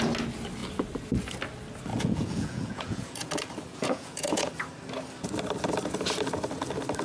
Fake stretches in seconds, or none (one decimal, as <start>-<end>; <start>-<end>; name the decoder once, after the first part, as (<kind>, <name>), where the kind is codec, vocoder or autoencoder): 1.9-3.3 (vocoder, Vocos); 3.7-4.5